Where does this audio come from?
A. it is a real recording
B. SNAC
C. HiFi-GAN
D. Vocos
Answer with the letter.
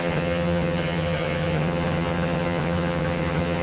C